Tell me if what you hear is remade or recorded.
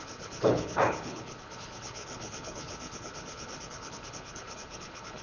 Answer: remade